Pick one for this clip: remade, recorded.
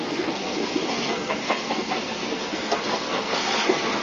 remade